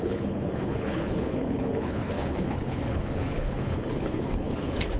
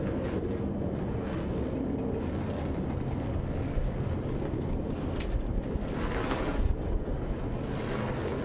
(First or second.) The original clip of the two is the second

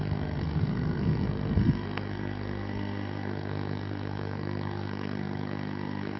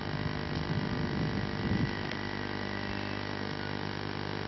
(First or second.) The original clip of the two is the second